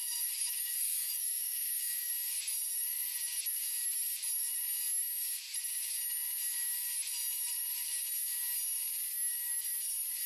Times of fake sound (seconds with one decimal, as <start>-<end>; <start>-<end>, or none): 0.0-2.1